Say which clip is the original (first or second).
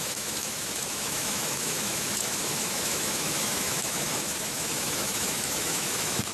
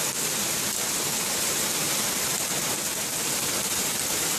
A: second